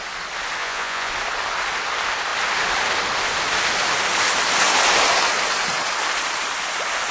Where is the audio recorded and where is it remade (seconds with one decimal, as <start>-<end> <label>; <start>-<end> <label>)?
0.0-0.6 recorded; 0.6-1.1 remade; 1.1-7.1 recorded